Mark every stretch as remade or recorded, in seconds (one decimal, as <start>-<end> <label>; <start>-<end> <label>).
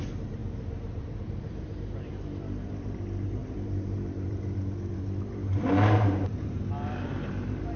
0.0-7.8 remade